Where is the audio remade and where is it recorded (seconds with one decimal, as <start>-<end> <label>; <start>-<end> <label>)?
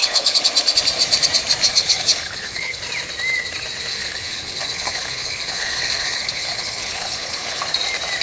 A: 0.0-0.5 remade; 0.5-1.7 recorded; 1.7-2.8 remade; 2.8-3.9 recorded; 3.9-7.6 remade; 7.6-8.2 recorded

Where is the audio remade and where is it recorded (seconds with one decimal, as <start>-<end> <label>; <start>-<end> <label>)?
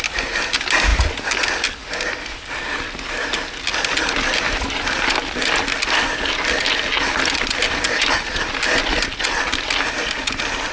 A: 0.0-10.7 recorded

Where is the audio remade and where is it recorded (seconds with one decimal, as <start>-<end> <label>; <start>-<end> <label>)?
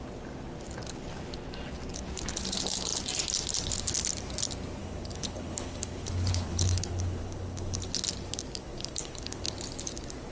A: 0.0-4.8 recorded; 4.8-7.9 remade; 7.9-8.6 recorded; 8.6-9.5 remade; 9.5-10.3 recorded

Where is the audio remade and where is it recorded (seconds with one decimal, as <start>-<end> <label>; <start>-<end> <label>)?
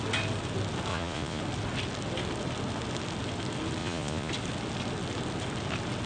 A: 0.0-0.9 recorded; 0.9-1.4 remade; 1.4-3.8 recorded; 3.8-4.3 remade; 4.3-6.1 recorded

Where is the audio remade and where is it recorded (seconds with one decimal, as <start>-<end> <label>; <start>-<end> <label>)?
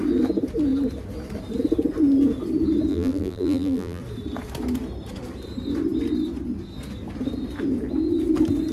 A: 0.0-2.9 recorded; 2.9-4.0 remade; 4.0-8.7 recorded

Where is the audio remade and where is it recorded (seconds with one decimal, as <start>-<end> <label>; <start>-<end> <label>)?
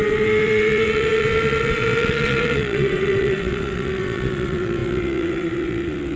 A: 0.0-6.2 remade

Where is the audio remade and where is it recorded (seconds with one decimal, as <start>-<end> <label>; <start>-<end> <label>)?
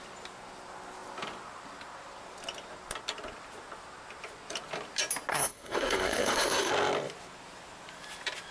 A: 0.0-5.3 recorded; 5.3-6.7 remade; 6.7-8.5 recorded